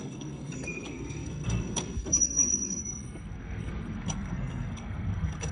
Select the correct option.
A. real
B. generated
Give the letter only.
B